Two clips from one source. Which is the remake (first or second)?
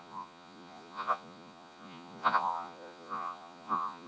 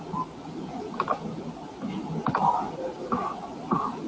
first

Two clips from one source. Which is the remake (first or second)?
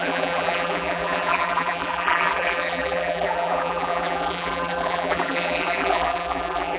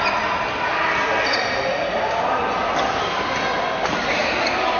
first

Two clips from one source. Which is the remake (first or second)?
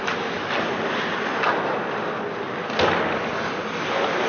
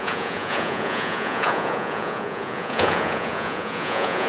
second